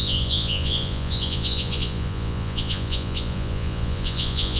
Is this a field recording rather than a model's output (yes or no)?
no